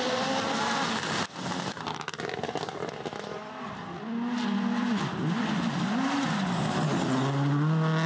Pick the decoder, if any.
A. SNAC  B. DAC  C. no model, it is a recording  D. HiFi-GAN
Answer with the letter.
C